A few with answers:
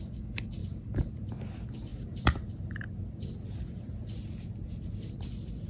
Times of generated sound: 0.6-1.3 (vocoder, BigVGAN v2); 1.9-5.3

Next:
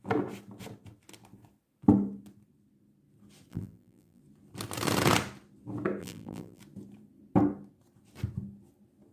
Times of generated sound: 3.5-4.2 (vocoder, BigVGAN v2); 6.0-6.6

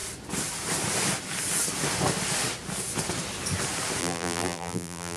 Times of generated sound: 4.0-5.2 (vocoder, BigVGAN v2)